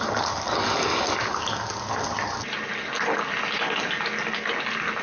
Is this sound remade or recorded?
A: recorded